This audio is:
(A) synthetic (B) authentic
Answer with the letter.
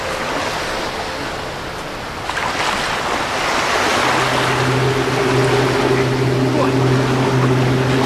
B